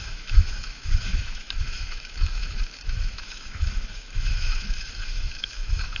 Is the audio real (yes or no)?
no